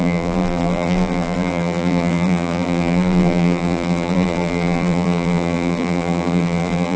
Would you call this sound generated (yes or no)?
yes